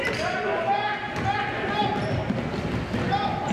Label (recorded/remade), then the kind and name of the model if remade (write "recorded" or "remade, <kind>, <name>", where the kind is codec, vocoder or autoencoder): recorded